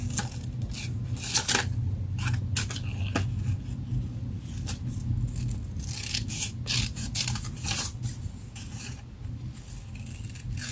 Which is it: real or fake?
real